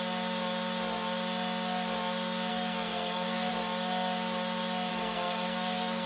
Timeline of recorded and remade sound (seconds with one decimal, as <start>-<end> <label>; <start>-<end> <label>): 0.0-2.5 recorded; 2.5-3.5 remade; 3.5-4.9 recorded; 4.9-6.1 remade